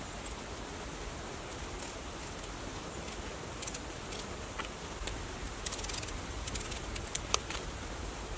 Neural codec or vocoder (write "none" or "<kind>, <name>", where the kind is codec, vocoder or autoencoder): none